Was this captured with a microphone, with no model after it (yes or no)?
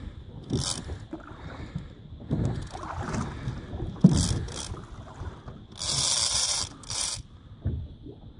yes